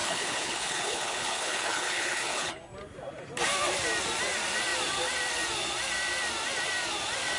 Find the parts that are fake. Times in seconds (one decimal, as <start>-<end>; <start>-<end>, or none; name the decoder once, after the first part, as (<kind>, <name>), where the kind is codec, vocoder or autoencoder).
0.0-2.5 (codec, HILCodec)